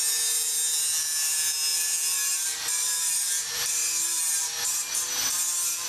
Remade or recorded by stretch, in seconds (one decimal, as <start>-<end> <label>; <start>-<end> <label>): 0.0-1.7 recorded; 1.7-4.2 remade; 4.2-5.9 recorded